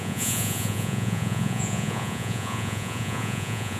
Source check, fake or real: fake